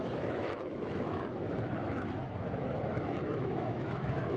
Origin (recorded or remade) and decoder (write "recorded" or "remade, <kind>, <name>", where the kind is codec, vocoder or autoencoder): remade, autoencoder, DAC-VAE